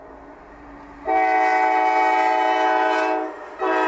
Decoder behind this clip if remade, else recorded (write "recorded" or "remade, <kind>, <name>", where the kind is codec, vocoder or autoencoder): recorded